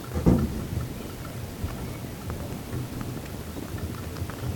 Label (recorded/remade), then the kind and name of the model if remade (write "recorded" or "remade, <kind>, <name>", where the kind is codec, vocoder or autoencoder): recorded